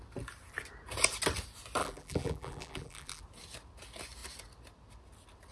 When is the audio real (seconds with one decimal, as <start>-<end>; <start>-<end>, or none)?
0.0-1.8; 3.2-5.5

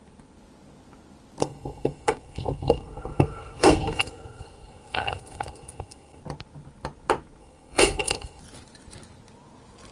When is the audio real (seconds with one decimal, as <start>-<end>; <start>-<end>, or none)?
0.0-1.4; 6.2-7.4; 8.4-9.9

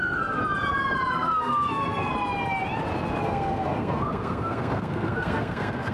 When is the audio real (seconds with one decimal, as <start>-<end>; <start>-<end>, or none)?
0.4-1.1; 2.1-3.2